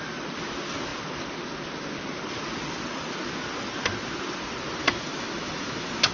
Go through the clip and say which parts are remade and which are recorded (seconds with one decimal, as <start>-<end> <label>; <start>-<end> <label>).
0.0-4.8 recorded; 4.8-6.1 remade